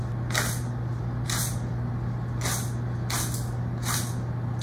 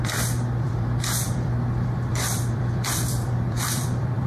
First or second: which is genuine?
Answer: first